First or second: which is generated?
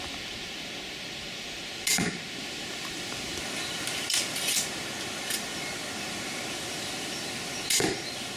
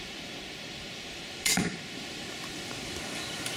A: second